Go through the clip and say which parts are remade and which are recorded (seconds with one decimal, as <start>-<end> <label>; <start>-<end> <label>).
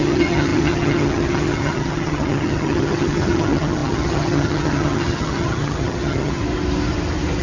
0.0-6.4 remade; 6.4-7.4 recorded